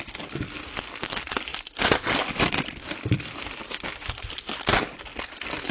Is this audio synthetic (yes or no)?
yes